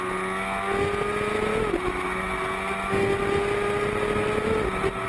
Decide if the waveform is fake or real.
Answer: real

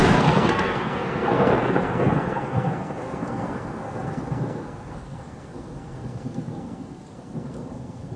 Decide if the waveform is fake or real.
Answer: fake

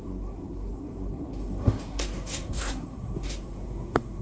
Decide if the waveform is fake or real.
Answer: fake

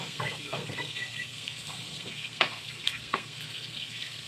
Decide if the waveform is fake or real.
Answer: fake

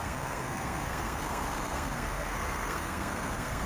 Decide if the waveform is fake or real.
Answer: fake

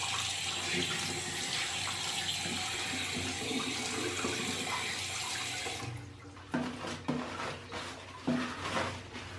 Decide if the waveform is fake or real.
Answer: real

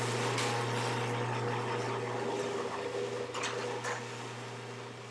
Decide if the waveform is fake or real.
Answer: real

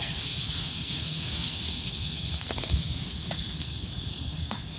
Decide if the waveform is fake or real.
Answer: fake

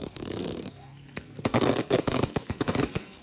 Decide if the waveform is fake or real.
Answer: fake